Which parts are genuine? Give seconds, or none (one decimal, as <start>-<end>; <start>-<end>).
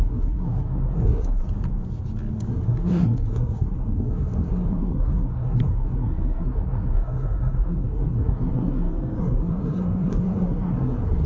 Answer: 1.4-2.5